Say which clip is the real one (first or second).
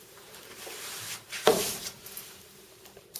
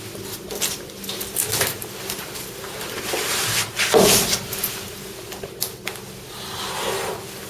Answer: second